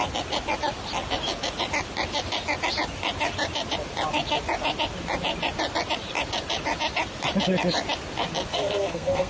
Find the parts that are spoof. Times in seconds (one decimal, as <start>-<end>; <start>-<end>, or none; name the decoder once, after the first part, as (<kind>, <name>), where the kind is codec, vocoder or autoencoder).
8.5-9.3 (codec, SNAC)